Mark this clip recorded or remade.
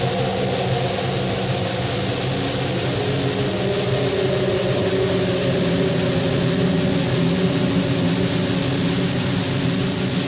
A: recorded